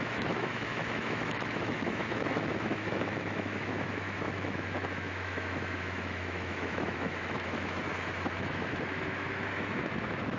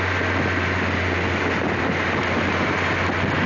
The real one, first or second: second